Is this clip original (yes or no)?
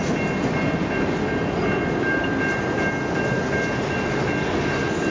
yes